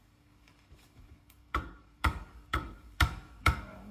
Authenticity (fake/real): fake